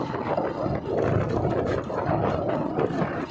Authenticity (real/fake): real